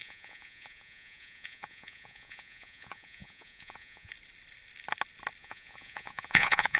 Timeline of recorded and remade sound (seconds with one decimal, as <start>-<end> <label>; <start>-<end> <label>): 0.0-4.1 remade; 4.1-5.4 recorded; 5.4-6.8 remade